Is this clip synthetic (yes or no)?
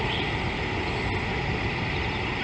no